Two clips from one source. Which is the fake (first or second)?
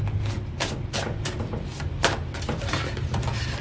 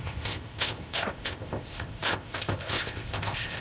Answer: second